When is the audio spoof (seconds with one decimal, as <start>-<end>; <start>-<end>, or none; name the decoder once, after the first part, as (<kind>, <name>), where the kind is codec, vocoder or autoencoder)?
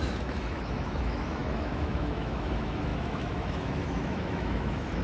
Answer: 0.0-5.0 (autoencoder, DAC-VAE)